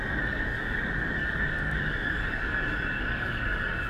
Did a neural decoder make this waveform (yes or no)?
yes